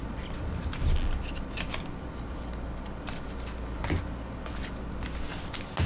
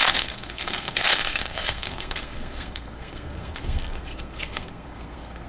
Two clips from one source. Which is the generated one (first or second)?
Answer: second